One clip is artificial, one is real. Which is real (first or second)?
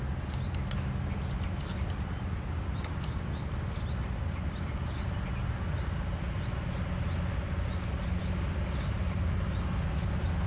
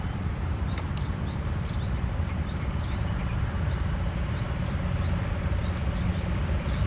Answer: first